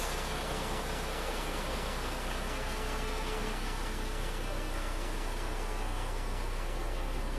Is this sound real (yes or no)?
no